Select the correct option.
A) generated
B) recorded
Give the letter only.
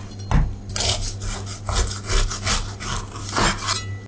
B